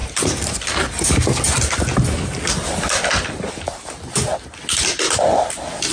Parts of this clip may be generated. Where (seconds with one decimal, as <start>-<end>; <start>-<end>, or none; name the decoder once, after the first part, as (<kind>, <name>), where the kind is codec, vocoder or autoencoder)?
none